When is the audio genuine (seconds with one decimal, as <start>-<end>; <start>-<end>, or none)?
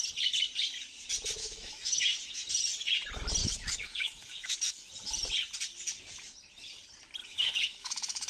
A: 0.0-1.4; 2.5-3.4; 4.9-7.2